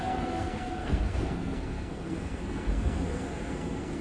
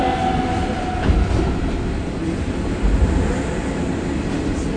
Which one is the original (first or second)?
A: second